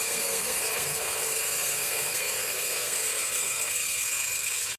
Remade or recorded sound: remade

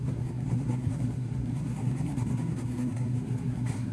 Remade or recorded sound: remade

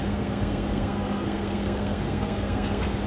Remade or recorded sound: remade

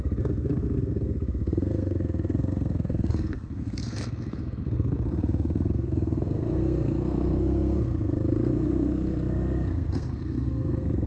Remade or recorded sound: remade